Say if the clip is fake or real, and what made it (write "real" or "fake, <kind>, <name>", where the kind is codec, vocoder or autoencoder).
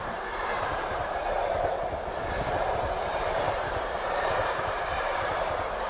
fake, vocoder, BigVGAN v2